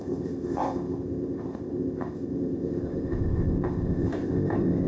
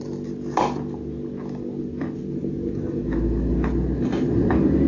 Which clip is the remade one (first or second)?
first